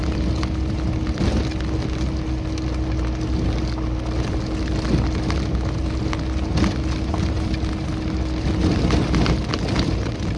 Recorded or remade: recorded